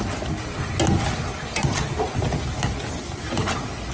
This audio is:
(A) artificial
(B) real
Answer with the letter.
B